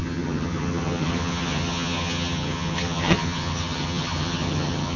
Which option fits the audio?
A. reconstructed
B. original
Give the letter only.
A